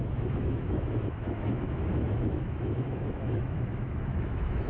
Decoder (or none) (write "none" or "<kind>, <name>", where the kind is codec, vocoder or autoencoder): autoencoder, DAC-VAE